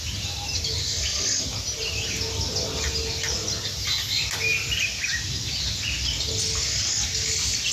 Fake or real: real